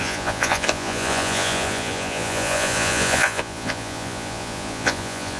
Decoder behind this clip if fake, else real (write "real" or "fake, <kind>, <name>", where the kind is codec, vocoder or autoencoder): fake, vocoder, Vocos